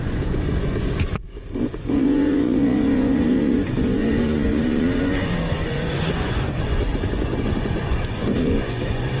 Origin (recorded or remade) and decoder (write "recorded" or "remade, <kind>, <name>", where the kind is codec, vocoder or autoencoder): remade, vocoder, Vocos